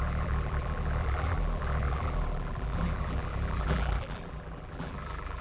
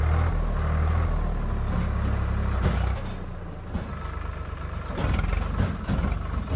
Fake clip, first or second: first